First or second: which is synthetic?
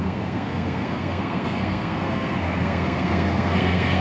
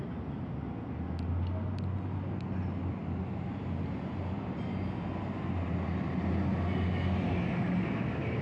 first